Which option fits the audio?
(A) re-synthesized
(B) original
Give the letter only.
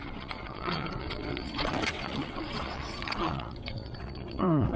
A